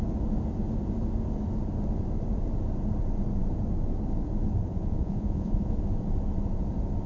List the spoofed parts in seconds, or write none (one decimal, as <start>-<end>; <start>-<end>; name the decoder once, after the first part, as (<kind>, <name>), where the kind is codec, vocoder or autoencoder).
4.7-5.8 (vocoder, Vocos)